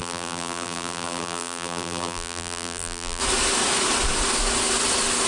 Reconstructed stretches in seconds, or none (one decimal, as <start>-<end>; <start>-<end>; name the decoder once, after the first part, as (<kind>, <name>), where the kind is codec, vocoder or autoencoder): 0.0-3.2 (vocoder, BigVGAN v2)